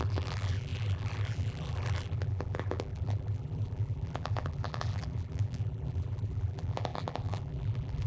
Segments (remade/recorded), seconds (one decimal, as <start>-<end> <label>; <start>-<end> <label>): 0.0-8.1 remade